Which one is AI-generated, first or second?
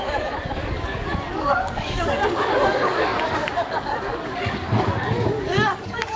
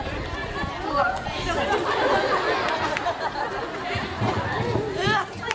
first